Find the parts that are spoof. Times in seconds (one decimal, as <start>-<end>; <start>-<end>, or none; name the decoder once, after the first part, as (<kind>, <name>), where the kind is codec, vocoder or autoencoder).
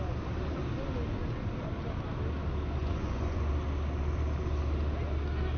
2.8-3.5 (vocoder, Vocos)